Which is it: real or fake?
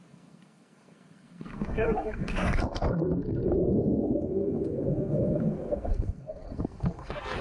fake